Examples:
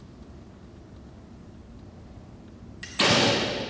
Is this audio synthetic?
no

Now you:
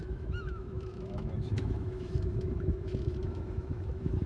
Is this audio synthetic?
yes